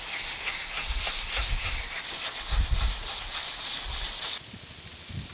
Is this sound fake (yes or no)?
no